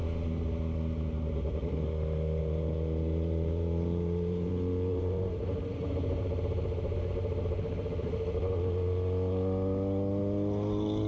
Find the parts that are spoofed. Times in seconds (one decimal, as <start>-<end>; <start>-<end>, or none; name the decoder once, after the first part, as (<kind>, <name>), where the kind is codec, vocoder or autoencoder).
2.4-4.5 (vocoder, BigVGAN v2); 4.9-8.2